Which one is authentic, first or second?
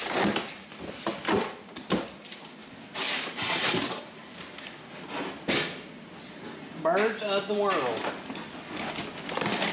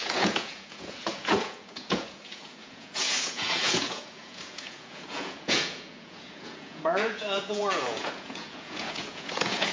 first